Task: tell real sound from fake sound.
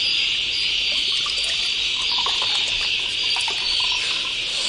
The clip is real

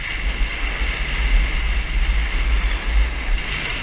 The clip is real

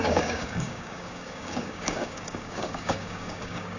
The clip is fake